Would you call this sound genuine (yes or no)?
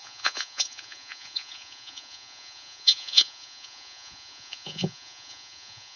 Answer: no